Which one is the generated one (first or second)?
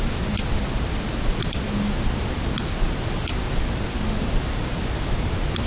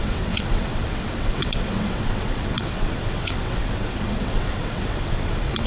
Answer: second